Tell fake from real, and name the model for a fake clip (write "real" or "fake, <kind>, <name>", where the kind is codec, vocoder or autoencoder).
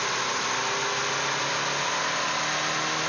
real